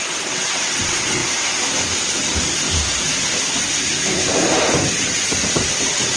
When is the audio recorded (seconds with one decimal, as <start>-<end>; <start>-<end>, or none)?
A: 1.2-4.9; 5.4-6.2